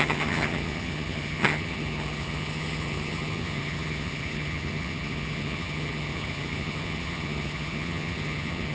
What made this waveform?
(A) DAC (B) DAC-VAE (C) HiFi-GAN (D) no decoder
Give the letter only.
C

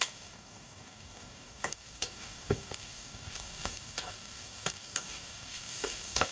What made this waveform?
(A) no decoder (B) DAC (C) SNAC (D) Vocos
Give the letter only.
B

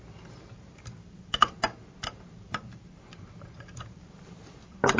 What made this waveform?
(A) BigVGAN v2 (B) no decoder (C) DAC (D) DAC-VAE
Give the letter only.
A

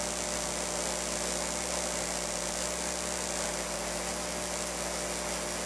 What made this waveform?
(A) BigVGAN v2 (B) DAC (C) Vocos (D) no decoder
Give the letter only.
D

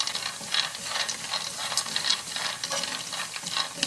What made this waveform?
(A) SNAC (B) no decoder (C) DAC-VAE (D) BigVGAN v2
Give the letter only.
B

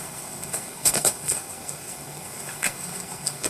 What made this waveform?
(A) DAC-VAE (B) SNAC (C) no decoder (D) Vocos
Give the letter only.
B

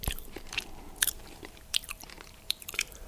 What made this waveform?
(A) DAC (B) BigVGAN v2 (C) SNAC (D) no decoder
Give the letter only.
B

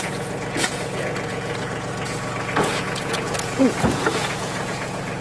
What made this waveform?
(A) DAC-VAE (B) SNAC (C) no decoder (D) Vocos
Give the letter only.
D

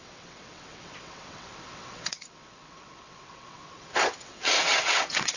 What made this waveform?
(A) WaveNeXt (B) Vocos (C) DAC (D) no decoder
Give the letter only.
A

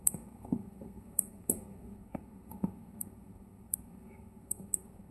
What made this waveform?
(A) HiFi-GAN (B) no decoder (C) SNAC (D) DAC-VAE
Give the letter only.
C